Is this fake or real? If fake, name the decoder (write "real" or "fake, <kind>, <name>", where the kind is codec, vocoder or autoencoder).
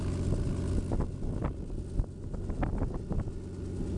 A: real